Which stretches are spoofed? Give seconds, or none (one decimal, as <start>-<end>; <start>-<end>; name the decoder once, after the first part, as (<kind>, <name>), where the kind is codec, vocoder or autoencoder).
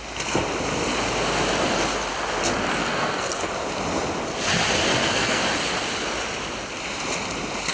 2.8-3.5 (codec, SNAC); 4.9-5.4